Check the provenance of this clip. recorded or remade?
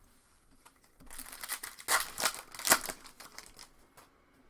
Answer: recorded